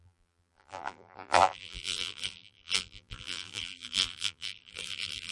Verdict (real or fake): fake